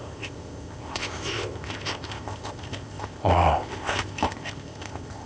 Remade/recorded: remade